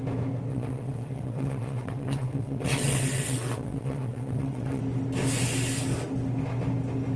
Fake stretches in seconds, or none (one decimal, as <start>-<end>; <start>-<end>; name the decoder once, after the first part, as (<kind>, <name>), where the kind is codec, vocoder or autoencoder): 0.5-4.8 (vocoder, WaveNeXt)